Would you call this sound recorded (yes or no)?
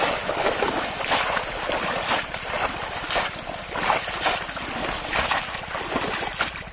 yes